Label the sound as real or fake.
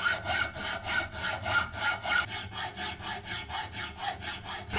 real